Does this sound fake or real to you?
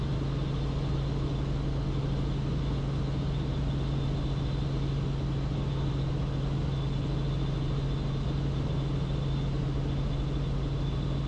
real